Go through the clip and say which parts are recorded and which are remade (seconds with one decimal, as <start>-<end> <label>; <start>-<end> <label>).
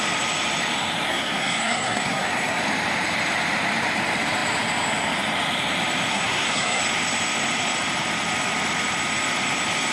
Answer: 0.0-1.1 recorded; 1.1-2.6 remade; 2.6-6.1 recorded; 6.1-6.8 remade; 6.8-9.9 recorded